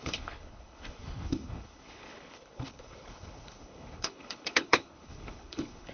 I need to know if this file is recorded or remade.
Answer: remade